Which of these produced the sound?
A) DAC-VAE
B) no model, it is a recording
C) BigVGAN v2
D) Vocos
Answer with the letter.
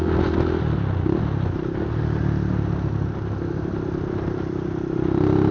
B